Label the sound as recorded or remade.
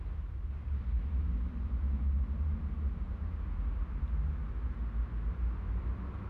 recorded